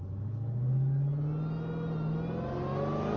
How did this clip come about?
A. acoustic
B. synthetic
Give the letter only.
A